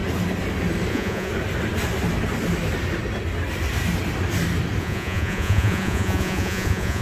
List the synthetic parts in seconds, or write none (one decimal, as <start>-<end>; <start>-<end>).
0.9-1.3; 4.8-7.0

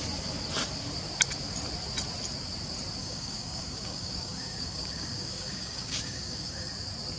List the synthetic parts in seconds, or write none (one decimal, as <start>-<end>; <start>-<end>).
3.0-6.7

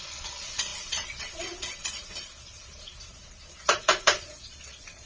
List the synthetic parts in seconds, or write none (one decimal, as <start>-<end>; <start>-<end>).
0.0-5.1

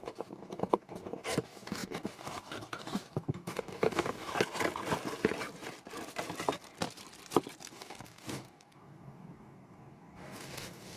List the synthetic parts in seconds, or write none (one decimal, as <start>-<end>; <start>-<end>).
0.0-4.3; 7.7-11.0

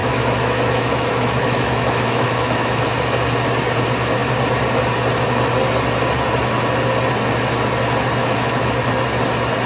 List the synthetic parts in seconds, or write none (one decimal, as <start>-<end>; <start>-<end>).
0.0-2.8; 8.2-8.7

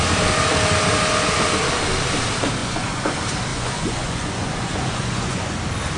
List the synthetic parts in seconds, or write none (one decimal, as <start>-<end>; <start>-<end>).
2.6-3.1; 3.5-5.6

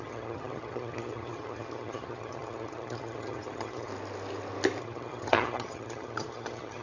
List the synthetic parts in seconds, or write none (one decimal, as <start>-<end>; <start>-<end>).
0.0-3.9; 4.8-6.8